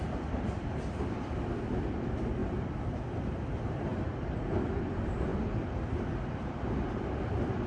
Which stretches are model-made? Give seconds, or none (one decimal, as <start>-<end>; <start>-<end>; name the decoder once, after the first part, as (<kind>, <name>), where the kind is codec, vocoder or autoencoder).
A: 0.0-2.4 (vocoder, BigVGAN v2); 3.2-3.9; 4.5-7.7